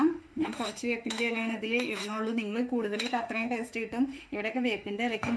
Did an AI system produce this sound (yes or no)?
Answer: yes